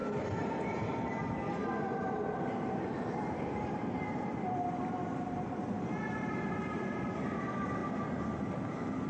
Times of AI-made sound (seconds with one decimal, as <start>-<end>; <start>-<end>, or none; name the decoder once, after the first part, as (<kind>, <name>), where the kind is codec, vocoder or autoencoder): none

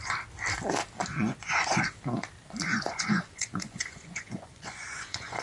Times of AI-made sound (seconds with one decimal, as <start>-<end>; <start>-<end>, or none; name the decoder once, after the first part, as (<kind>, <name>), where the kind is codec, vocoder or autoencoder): 1.1-1.8 (vocoder, Vocos); 2.7-5.4

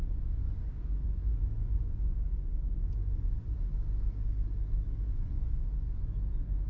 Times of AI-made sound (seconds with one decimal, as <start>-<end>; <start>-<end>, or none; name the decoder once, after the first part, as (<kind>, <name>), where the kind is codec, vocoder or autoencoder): 0.0-3.7 (vocoder, Vocos); 5.0-6.1

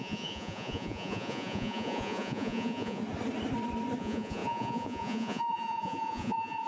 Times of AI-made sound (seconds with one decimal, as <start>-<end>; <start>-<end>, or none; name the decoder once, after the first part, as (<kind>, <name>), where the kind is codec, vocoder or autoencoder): 0.0-3.0 (vocoder, Vocos); 4.0-6.7

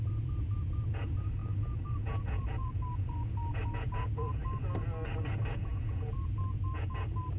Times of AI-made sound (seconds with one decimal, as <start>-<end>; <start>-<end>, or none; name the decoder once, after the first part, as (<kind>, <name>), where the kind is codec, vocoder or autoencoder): 0.0-4.4 (vocoder, Vocos); 5.6-7.4

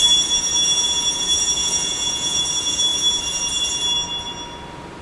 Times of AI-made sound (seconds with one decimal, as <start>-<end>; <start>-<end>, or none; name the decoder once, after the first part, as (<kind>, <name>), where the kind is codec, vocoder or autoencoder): 1.6-2.4 (vocoder, Vocos)

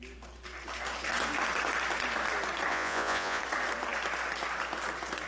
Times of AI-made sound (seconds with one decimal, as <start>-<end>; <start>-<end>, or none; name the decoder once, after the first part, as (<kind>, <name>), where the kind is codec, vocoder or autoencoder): 2.7-3.4 (vocoder, Vocos)